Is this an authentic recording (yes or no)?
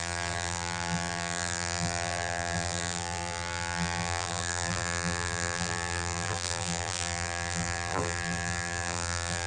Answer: no